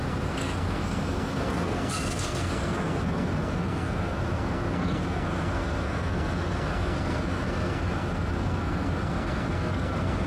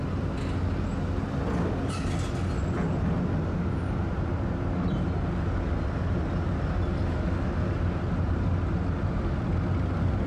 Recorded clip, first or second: second